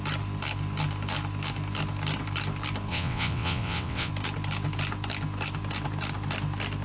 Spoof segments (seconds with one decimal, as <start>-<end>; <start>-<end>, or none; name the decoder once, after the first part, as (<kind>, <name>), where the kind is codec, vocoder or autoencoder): 2.9-4.1 (vocoder, WaveNeXt)